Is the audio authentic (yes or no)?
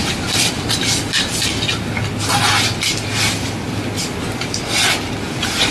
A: yes